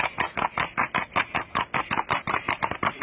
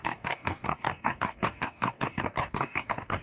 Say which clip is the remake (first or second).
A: second